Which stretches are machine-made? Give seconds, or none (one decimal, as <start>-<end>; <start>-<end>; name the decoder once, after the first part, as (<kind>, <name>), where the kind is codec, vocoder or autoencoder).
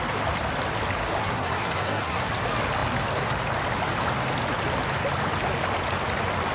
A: 1.2-2.2 (codec, SNAC)